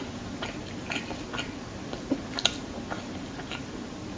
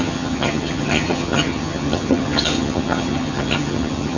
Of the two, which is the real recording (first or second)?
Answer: first